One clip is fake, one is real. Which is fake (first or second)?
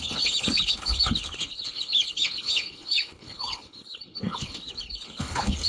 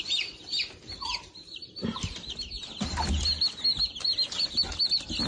first